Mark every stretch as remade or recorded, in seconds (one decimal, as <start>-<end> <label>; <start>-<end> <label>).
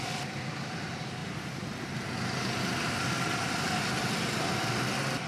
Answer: 0.0-5.3 recorded